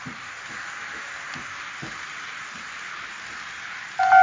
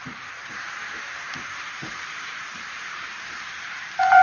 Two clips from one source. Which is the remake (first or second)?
second